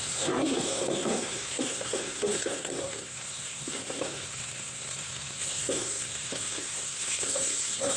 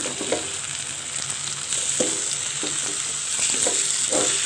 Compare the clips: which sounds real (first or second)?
second